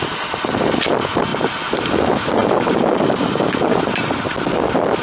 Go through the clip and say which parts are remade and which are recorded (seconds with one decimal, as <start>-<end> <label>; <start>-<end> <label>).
0.0-1.3 recorded; 1.3-1.9 remade; 1.9-5.0 recorded